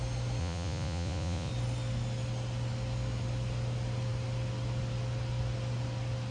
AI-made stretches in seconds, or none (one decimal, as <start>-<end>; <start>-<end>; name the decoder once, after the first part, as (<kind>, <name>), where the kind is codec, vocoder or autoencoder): 0.4-1.5 (vocoder, Vocos)